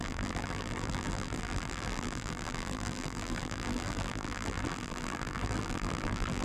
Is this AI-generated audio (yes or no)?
yes